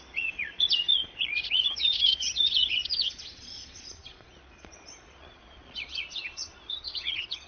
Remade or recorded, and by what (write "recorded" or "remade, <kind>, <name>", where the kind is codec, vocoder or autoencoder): remade, vocoder, Vocos